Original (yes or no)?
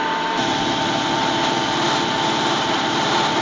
no